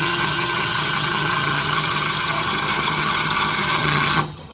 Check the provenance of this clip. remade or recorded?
remade